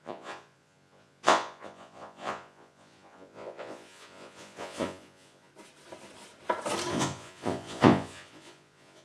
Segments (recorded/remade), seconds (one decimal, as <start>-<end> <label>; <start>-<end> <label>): 0.0-5.5 remade; 5.5-6.9 recorded; 6.9-9.0 remade